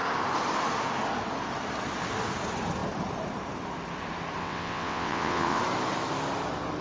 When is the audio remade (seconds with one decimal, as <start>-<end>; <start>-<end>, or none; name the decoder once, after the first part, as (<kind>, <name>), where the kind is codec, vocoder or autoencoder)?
4.4-5.6 (vocoder, WaveNeXt)